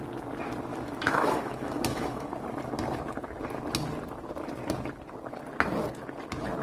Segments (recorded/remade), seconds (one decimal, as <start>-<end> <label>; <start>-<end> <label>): 0.0-0.7 recorded; 0.7-2.3 remade; 2.3-6.6 recorded